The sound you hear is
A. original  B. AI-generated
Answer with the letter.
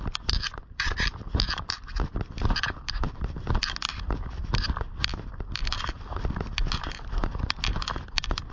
B